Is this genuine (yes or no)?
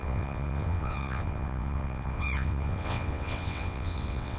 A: no